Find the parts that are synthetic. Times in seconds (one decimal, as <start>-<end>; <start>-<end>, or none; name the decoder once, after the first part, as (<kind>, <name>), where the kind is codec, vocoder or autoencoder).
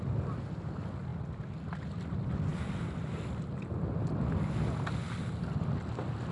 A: none